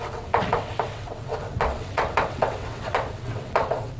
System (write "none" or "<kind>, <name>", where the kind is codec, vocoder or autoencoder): vocoder, WaveNeXt